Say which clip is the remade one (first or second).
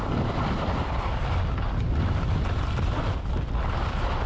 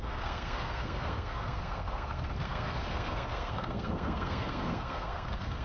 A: second